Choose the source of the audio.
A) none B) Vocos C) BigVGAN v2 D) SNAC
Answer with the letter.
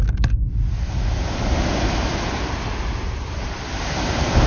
A